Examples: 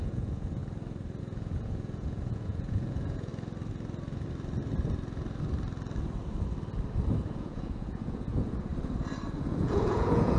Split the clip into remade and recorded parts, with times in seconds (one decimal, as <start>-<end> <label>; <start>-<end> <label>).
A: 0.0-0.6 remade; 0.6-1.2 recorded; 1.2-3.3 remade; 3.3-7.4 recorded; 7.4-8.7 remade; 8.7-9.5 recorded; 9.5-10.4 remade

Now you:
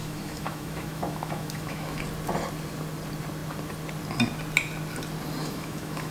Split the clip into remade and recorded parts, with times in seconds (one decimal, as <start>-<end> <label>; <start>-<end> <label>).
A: 0.0-2.0 remade; 2.0-5.4 recorded; 5.4-6.1 remade

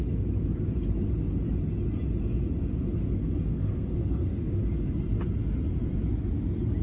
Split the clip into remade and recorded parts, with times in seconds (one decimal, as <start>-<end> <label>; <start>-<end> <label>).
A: 0.0-3.2 recorded; 3.2-4.5 remade; 4.5-6.8 recorded